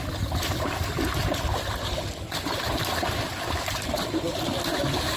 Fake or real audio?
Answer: real